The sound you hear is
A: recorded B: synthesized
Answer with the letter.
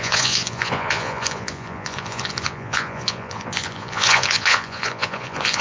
B